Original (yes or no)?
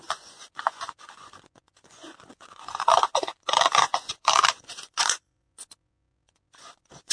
no